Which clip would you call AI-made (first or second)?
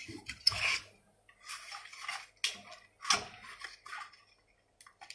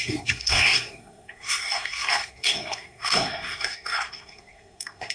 second